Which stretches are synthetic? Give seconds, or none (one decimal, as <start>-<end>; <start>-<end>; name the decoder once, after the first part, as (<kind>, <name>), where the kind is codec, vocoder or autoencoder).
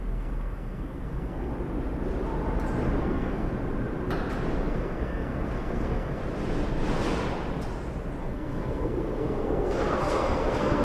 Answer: 0.0-1.5 (codec, SNAC); 3.0-3.5; 4.6-6.2; 8.2-10.8